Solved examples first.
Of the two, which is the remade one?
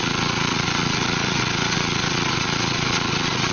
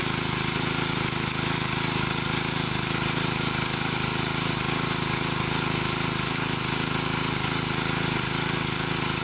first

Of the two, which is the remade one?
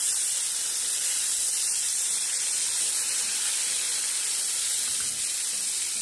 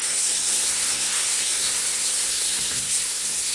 second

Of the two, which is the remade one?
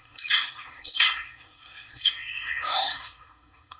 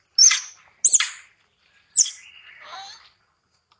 first